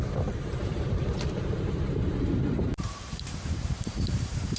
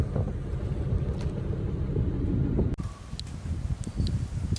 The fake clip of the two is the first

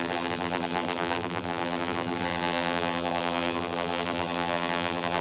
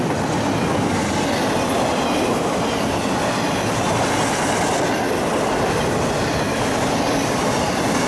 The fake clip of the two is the first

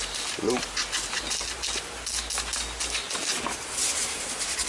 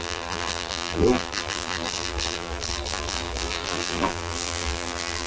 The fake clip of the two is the second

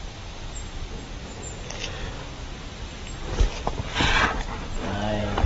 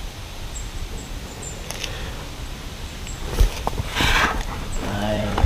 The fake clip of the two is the second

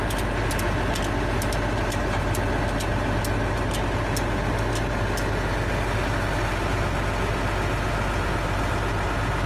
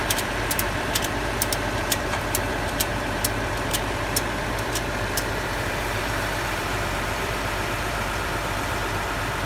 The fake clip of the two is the second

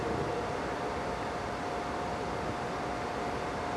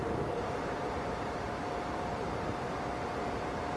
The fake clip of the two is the second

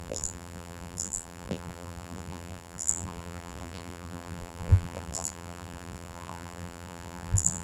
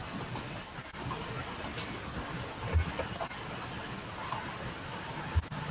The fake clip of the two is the first